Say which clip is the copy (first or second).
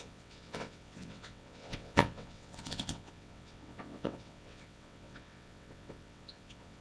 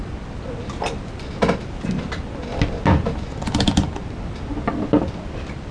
first